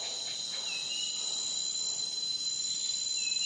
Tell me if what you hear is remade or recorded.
recorded